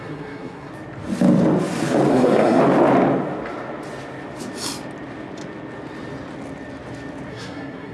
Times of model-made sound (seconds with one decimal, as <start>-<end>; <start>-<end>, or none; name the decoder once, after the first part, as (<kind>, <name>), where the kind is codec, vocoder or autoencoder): 0.0-0.7 (codec, SNAC); 2.1-2.6; 7.3-7.9